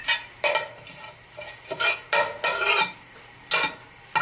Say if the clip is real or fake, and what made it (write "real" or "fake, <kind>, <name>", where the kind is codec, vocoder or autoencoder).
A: real